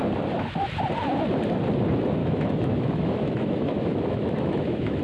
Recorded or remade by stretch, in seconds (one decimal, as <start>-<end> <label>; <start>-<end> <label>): 0.0-2.2 recorded; 2.2-5.0 remade